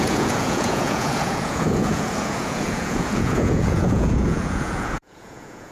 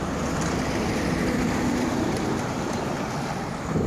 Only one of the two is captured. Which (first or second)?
second